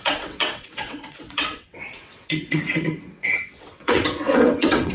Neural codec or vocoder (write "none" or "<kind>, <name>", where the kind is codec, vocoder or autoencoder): vocoder, WaveNeXt